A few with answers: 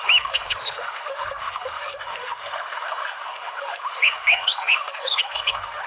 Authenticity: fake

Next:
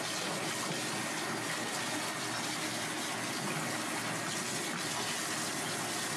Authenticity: real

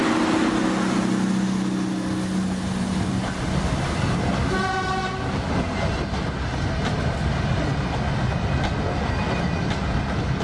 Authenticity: real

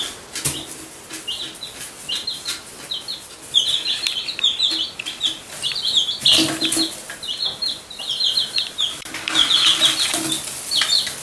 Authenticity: real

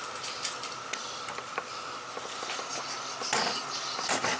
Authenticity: real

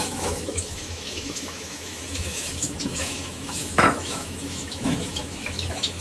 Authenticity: fake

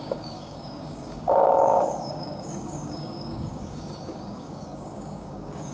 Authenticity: fake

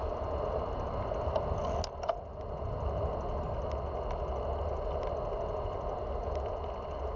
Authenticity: real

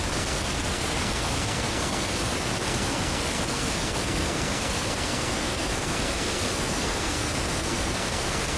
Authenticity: fake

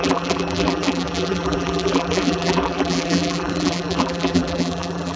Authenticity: fake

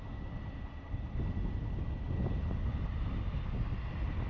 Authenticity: real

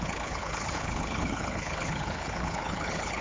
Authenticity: fake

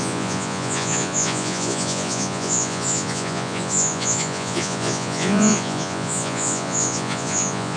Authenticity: fake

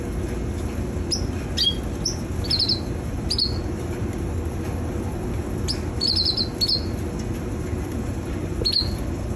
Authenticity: real